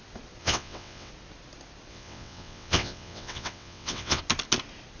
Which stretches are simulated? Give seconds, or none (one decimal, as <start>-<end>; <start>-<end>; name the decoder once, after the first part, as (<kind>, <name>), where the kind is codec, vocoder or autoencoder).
0.4-1.1 (vocoder, WaveNeXt); 1.9-4.2